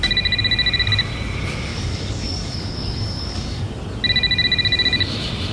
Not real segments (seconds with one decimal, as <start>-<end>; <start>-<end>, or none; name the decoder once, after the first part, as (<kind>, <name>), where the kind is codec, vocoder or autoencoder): 1.7-3.8 (codec, DAC)